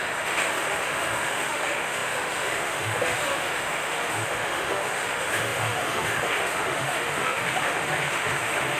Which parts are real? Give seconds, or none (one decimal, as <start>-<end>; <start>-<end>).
none